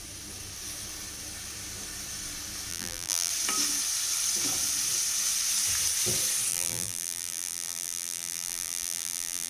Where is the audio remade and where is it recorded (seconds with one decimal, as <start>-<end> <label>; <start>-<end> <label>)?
0.0-2.7 recorded; 2.7-3.3 remade; 3.3-6.5 recorded; 6.5-9.5 remade